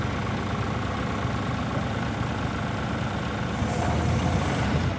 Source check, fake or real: real